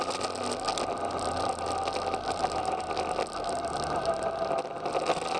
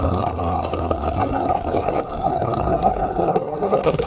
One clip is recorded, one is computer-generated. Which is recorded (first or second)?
first